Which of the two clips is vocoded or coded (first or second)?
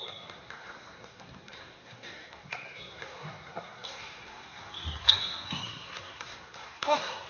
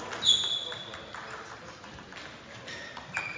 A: first